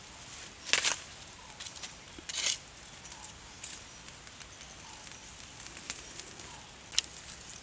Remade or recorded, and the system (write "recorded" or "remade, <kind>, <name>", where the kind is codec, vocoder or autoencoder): recorded